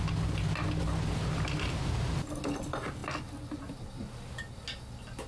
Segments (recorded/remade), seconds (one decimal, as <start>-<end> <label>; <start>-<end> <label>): 0.0-5.3 recorded